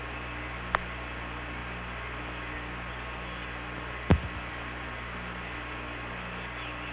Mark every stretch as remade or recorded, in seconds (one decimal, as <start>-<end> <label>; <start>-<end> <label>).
0.0-6.9 recorded